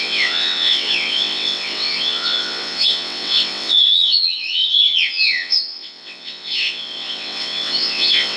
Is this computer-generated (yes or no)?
yes